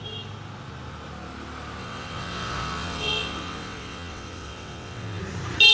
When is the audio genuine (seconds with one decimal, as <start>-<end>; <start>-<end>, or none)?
0.0-1.8; 5.2-5.7